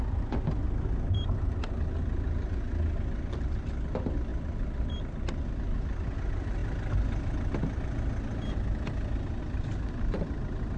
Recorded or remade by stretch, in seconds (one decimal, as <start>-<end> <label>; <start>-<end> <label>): 0.0-10.8 recorded